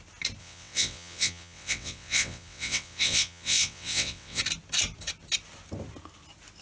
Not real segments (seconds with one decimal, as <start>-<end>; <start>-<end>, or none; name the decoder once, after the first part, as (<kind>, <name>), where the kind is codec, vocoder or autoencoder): 0.4-4.4 (vocoder, WaveNeXt)

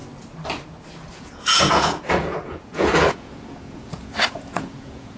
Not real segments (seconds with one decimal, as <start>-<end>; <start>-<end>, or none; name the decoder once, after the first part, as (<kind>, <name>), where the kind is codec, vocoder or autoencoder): 1.1-5.2 (vocoder, Vocos)

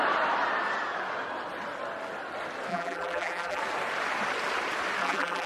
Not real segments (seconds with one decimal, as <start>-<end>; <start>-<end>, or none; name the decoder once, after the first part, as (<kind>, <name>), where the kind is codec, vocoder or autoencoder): 2.7-3.6 (vocoder, BigVGAN v2); 5.0-5.5

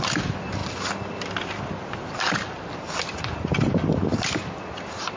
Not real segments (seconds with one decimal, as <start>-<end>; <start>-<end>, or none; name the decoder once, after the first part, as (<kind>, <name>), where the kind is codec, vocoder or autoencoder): 0.0-0.6 (vocoder, BigVGAN v2); 3.7-5.2

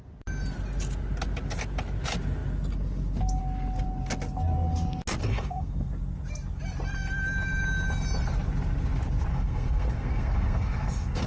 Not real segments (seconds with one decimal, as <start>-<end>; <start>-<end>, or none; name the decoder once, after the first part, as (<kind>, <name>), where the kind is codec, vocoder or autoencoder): 5.2-5.9 (codec, SNAC); 9.3-11.3